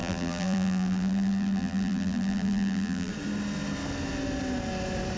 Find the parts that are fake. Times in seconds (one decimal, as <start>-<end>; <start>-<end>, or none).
0.0-3.1